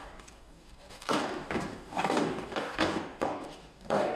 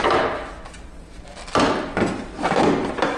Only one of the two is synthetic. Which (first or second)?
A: first